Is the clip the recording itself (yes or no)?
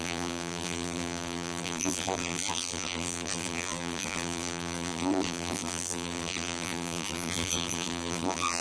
no